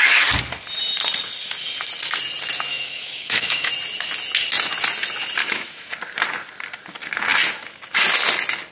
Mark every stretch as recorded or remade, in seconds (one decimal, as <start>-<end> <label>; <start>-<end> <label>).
0.0-2.7 recorded; 2.7-3.7 remade; 3.7-5.4 recorded; 5.4-5.9 remade; 5.9-8.7 recorded